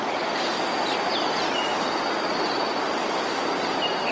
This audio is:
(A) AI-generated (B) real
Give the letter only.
B